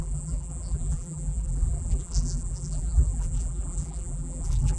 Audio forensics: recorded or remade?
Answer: remade